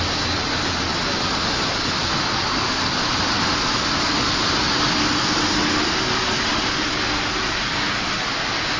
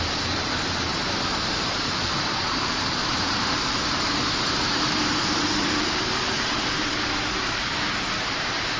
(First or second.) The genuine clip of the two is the first